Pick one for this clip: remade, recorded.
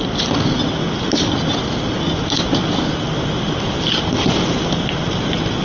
recorded